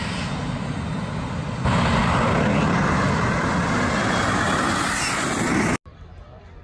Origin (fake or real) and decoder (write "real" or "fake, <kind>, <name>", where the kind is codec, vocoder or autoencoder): real